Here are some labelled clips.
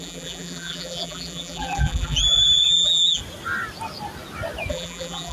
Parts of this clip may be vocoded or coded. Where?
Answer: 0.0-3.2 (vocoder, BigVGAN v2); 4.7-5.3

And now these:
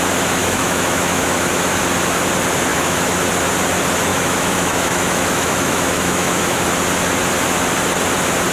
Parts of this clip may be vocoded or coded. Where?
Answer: 0.4-1.5 (autoencoder, DAC-VAE); 2.7-3.2; 4.1-6.6

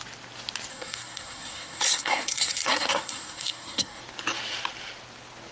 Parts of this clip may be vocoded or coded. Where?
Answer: 0.7-4.0 (codec, SNAC)

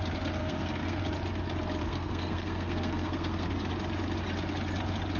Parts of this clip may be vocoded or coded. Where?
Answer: 0.4-1.0 (codec, SNAC); 1.8-3.5

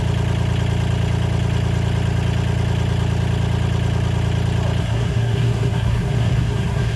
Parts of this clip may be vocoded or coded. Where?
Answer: 4.8-7.0 (codec, SNAC)

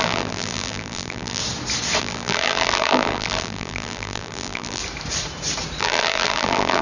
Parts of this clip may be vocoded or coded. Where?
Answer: 0.0-1.4 (vocoder, BigVGAN v2); 2.0-4.8; 5.8-6.8

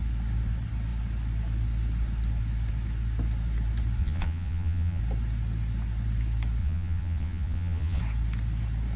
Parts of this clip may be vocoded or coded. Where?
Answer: 4.0-5.0 (vocoder, Vocos); 6.6-8.0

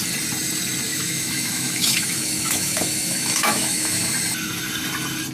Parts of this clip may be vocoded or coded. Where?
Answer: 0.9-4.1 (autoencoder, DAC-VAE)